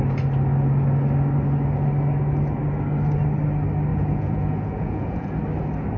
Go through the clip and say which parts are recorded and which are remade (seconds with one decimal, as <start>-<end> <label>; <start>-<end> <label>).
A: 0.0-3.9 recorded; 3.9-5.3 remade; 5.3-6.0 recorded